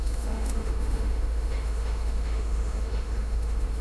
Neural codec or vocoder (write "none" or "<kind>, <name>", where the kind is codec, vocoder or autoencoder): autoencoder, DAC-VAE